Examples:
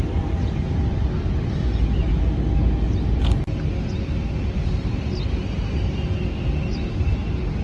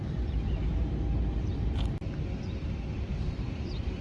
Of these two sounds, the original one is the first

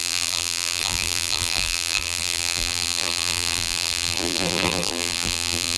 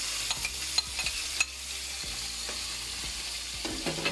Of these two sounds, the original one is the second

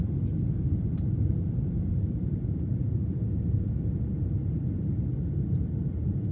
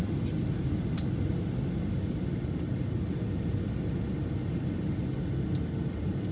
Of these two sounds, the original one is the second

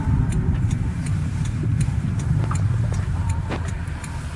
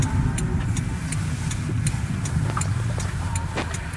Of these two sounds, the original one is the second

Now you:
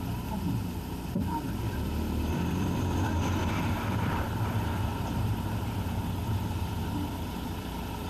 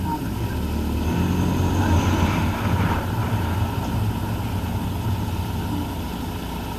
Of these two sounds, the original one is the second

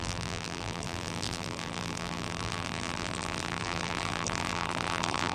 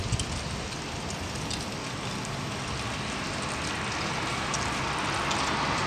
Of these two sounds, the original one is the second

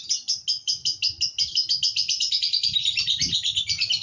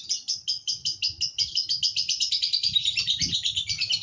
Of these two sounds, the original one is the first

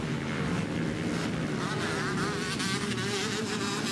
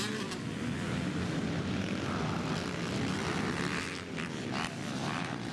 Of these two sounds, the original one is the first